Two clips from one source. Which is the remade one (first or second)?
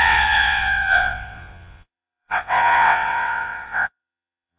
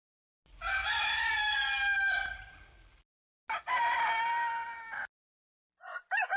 first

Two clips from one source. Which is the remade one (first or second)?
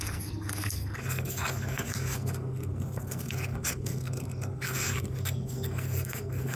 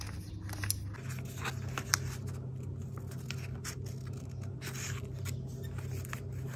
first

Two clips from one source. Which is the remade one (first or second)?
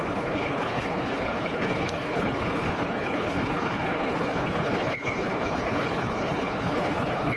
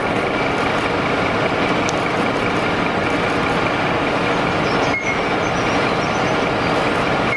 first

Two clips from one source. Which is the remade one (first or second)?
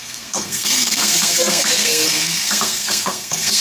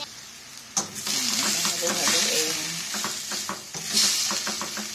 first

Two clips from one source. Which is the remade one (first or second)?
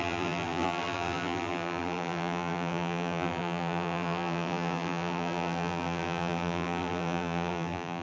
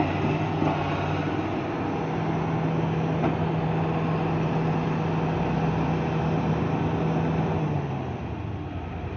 first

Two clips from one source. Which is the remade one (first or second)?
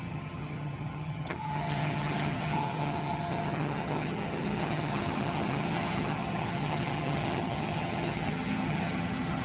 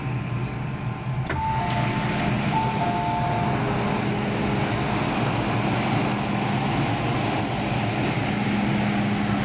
first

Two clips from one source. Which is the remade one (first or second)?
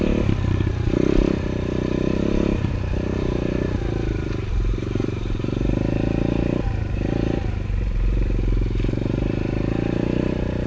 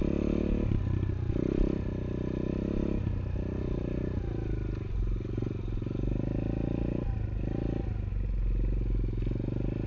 first